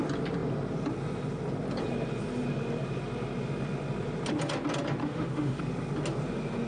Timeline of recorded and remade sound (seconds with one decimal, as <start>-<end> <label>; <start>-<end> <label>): 0.0-5.0 recorded; 5.0-5.6 remade; 5.6-6.7 recorded